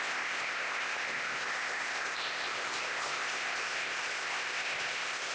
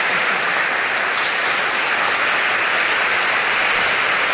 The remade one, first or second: first